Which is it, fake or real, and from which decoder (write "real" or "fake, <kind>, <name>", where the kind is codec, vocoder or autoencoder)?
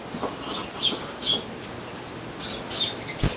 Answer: real